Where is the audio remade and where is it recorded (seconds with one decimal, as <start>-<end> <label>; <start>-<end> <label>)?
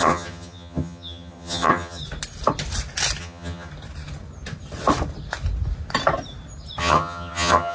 0.0-2.0 remade; 2.0-3.2 recorded; 3.2-3.7 remade; 3.7-6.8 recorded; 6.8-7.7 remade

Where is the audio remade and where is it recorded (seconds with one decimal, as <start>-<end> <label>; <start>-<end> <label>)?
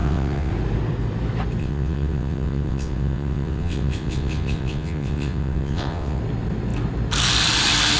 0.0-0.5 remade; 0.5-1.6 recorded; 1.6-6.2 remade; 6.2-8.0 recorded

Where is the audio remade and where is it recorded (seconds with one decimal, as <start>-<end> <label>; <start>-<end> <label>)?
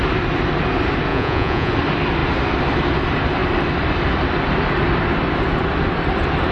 0.0-1.1 recorded; 1.1-1.7 remade; 1.7-6.5 recorded